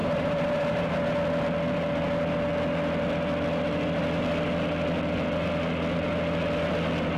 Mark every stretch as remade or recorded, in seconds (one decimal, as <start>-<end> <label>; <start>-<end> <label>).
0.0-0.9 remade; 0.9-7.2 recorded